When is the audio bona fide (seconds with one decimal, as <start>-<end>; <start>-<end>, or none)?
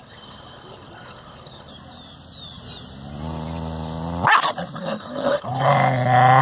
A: 1.7-4.8; 5.7-6.4